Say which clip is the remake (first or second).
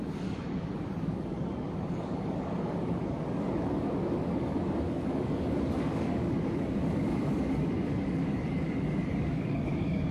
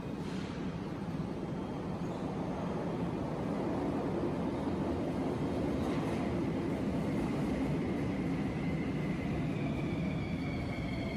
first